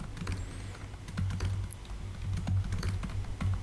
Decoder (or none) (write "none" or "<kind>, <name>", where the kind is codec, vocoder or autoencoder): none